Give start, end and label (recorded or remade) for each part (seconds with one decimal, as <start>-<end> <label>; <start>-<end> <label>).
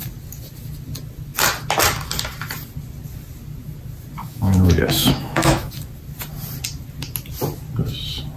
0.0-4.2 recorded; 4.2-5.7 remade; 5.7-8.4 recorded